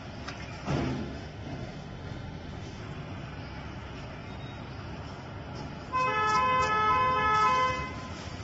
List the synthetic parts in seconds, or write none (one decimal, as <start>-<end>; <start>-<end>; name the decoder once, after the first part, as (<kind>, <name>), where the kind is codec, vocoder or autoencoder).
0.9-2.8 (autoencoder, DAC-VAE)